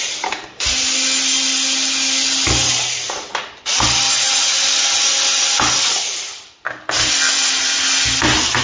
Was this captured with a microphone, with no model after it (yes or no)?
yes